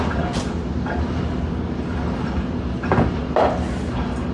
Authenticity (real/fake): real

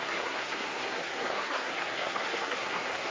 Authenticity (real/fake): fake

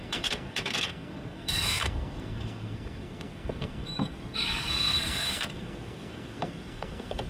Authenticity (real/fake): fake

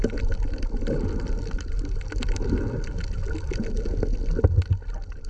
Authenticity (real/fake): real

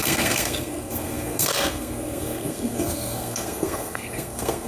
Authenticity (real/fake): fake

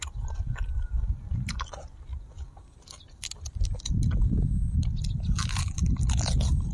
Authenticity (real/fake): real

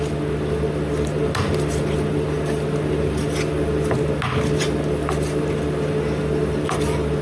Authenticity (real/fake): real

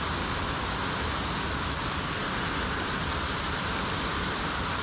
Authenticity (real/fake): real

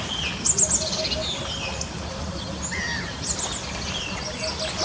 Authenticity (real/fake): real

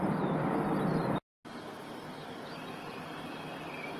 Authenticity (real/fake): real